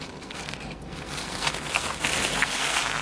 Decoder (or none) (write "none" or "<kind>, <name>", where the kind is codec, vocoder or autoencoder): codec, SNAC